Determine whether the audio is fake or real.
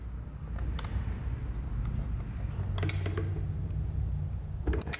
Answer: real